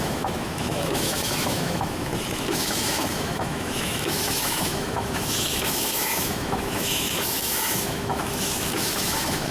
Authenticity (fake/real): fake